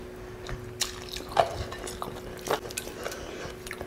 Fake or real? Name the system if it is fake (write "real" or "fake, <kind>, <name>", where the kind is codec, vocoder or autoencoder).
real